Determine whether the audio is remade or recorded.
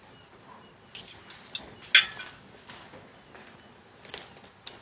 recorded